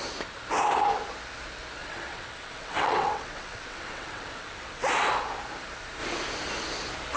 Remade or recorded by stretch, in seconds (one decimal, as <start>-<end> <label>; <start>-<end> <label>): 0.0-1.8 recorded; 1.8-4.9 remade; 4.9-7.2 recorded